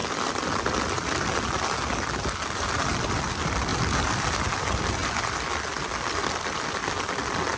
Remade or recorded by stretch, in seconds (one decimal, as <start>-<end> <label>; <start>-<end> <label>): 0.0-7.6 recorded